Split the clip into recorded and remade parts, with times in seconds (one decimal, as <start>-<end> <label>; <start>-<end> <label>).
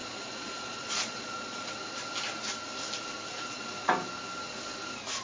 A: 0.0-1.7 remade; 1.7-3.3 recorded; 3.3-3.9 remade; 3.9-5.2 recorded